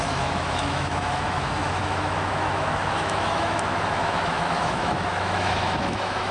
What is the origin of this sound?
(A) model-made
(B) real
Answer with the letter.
A